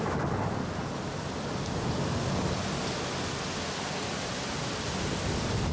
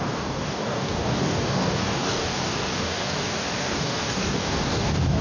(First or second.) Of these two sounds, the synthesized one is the second